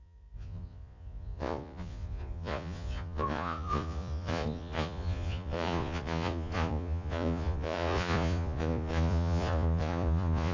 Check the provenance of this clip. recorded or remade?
remade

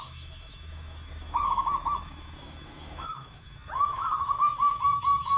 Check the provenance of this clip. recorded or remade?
remade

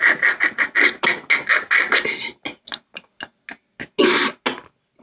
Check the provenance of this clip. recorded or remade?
recorded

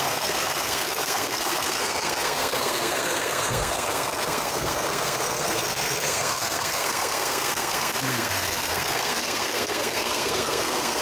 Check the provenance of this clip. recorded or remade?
remade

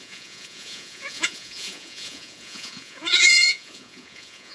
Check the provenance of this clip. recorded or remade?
remade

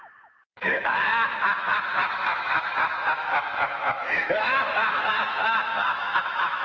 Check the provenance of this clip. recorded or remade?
remade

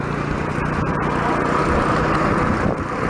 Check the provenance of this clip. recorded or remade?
recorded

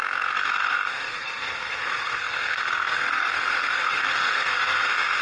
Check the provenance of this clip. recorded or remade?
remade